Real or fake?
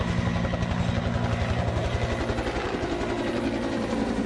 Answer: real